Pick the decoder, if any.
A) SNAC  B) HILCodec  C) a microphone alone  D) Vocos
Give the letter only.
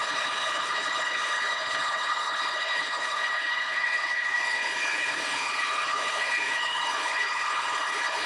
B